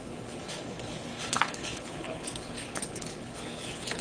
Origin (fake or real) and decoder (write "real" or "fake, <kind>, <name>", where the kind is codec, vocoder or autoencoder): fake, codec, HILCodec